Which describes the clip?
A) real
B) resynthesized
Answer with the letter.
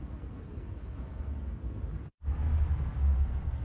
B